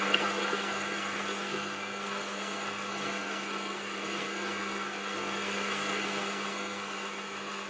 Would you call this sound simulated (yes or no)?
yes